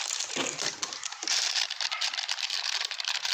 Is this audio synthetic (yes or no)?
yes